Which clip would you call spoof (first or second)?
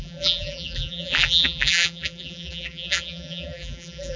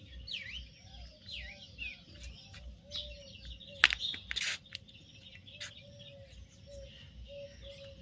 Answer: first